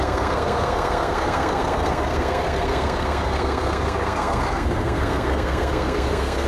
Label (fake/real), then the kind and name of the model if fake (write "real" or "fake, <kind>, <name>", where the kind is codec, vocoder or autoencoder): fake, codec, SNAC